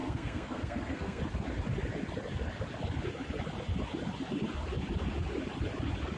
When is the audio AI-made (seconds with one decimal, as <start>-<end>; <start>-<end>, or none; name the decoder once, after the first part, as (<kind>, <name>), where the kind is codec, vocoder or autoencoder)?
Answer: 0.0-1.2 (codec, SNAC)